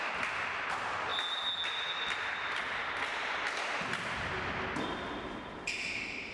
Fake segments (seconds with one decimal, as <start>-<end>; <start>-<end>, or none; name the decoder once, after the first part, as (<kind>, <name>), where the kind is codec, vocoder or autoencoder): 0.0-1.1 (vocoder, BigVGAN v2); 4.9-6.3